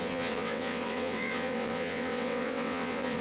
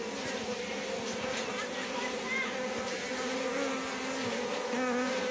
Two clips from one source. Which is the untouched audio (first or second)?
second